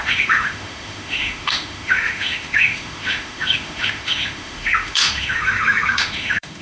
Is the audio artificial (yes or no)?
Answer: yes